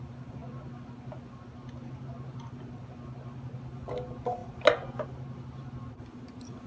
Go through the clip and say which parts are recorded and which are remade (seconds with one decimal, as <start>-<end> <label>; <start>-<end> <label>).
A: 0.0-6.7 recorded